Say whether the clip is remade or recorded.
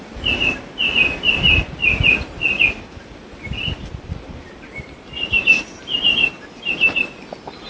recorded